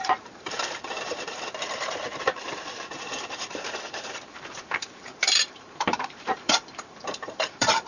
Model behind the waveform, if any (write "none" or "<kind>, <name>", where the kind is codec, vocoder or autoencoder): vocoder, BigVGAN v2